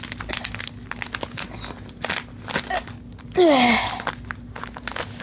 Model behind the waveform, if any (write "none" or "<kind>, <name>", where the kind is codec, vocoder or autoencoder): none